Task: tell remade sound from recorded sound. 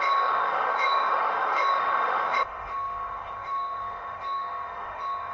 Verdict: remade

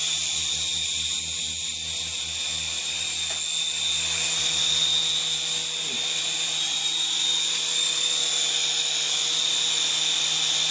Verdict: recorded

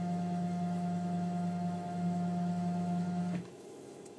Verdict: remade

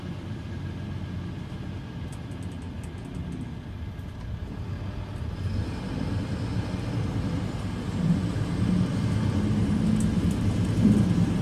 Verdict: recorded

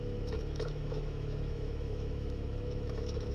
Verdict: remade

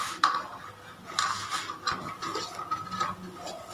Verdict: recorded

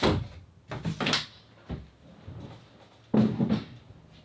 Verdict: recorded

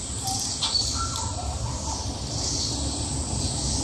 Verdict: recorded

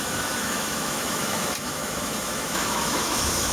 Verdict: remade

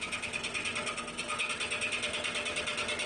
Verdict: recorded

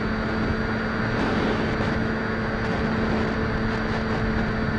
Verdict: recorded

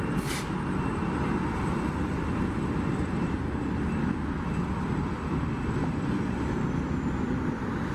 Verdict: recorded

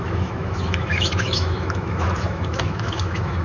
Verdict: remade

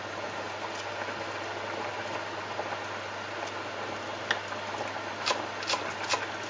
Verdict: recorded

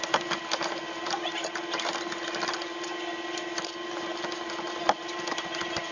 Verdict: recorded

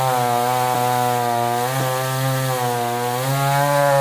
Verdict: recorded